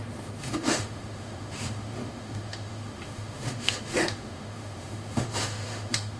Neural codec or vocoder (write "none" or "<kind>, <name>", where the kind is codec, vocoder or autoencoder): autoencoder, DAC-VAE